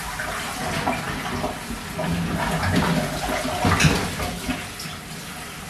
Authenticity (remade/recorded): recorded